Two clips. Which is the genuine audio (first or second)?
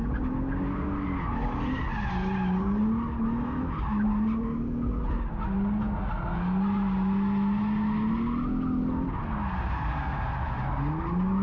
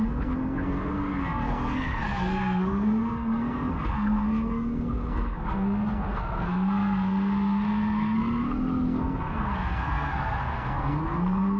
first